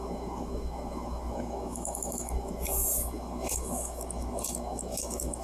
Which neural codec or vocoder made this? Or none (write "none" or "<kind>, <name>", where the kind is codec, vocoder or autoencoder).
autoencoder, DAC-VAE